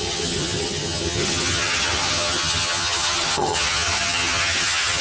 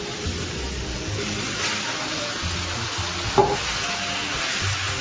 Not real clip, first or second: first